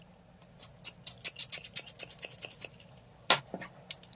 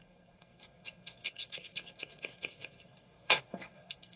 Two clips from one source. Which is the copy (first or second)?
second